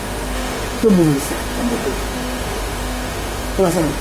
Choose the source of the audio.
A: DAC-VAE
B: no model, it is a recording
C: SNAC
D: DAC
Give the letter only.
A